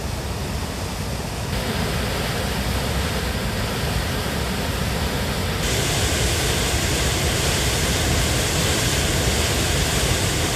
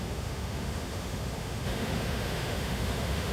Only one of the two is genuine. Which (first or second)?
first